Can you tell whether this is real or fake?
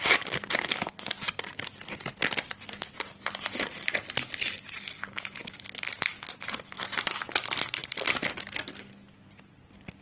real